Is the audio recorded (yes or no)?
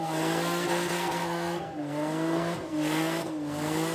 no